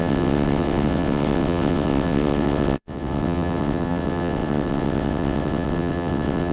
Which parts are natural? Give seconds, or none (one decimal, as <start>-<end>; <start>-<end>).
none